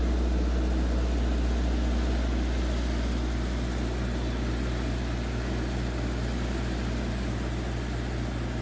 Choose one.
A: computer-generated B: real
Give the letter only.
B